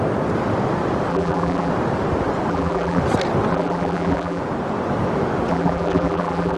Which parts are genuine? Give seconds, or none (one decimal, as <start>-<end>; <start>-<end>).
0.0-1.1; 1.7-2.5; 3.0-3.5; 4.4-5.5